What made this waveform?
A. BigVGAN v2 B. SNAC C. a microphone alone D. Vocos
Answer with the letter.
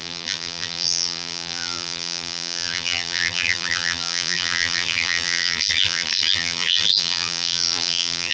A